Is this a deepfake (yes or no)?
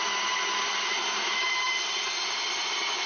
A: no